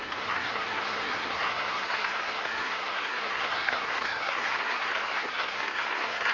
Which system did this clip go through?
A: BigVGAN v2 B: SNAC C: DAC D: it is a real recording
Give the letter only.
B